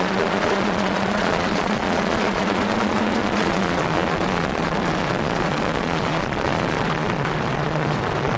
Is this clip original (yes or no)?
no